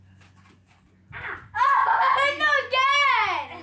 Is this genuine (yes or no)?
yes